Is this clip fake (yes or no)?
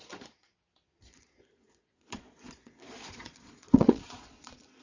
yes